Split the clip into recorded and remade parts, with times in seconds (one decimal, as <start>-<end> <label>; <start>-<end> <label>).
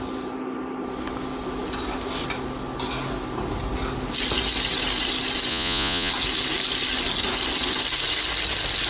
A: 0.0-5.5 recorded; 5.5-6.1 remade; 6.1-8.9 recorded